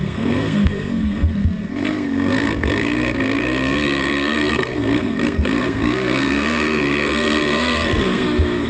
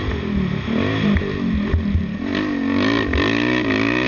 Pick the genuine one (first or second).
second